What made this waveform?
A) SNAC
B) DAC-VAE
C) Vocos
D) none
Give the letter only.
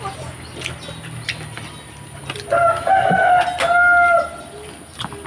D